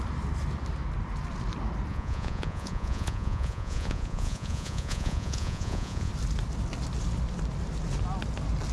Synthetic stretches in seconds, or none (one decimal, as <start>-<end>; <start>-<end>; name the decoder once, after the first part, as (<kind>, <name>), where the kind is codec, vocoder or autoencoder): 1.9-6.1 (vocoder, Vocos)